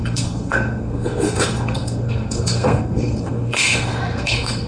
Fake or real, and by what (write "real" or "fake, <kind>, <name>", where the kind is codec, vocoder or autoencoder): fake, codec, SNAC